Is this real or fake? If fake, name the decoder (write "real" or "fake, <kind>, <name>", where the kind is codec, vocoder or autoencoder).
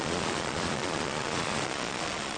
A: fake, vocoder, Vocos